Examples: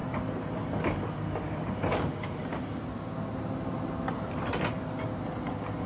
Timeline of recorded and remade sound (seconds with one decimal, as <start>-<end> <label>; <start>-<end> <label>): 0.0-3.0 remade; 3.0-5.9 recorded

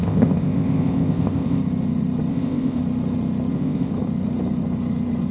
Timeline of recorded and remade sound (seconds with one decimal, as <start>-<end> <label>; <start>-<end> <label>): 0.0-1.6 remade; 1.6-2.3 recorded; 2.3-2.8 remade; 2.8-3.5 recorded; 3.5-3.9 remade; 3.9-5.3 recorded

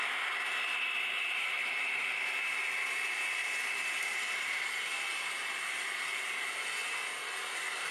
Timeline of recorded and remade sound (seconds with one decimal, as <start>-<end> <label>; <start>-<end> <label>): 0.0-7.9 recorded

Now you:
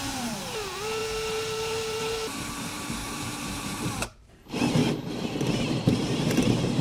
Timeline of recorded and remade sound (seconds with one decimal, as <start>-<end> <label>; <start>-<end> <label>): 0.0-4.8 remade; 4.8-5.5 recorded; 5.5-6.8 remade